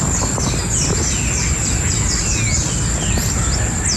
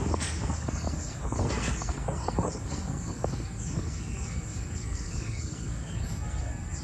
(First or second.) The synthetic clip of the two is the second